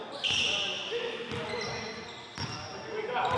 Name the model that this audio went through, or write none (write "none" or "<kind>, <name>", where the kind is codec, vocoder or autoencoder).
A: none